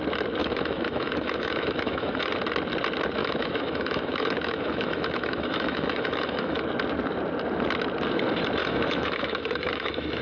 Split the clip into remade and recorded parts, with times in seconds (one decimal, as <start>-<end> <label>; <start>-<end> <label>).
0.0-0.4 recorded; 0.4-2.3 remade; 2.3-3.2 recorded; 3.2-6.6 remade; 6.6-8.6 recorded; 8.6-10.2 remade